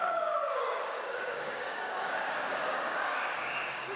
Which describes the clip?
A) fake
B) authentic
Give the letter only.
A